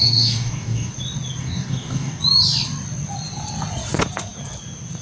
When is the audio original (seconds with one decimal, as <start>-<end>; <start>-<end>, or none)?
0.9-1.4; 2.2-5.0